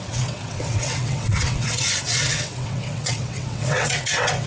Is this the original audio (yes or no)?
no